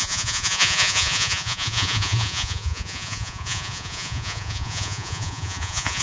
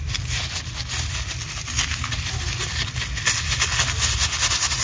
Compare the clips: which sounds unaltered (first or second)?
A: second